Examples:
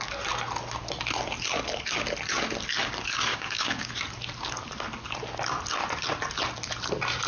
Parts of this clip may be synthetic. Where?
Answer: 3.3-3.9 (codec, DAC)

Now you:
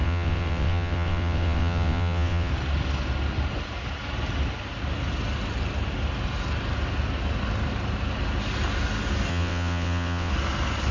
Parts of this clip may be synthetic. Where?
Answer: 0.0-2.5 (vocoder, WaveNeXt); 9.3-10.3

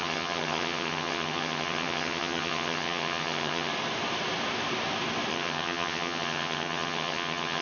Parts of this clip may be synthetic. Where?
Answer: 0.0-3.7 (vocoder, HiFi-GAN); 5.3-7.6

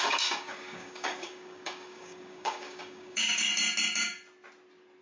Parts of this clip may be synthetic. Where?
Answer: 0.0-3.5 (codec, DAC)

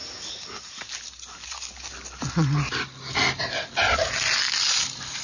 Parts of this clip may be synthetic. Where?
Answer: none

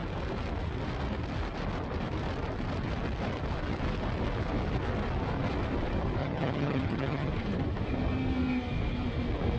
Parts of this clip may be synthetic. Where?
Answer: 6.2-7.3 (vocoder, HiFi-GAN)

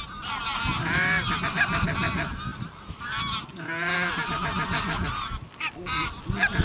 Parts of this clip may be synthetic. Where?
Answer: none